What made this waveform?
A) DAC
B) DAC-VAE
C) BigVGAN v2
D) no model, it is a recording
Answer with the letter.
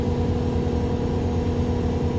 D